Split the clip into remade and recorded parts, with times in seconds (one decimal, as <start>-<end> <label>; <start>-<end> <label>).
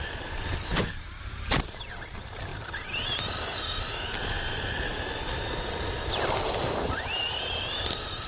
0.0-2.5 remade; 2.5-3.7 recorded; 3.7-6.9 remade; 6.9-7.8 recorded; 7.8-8.3 remade